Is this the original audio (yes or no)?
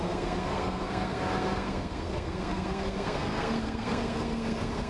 no